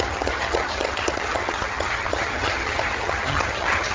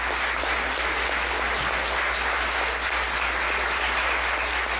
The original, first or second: second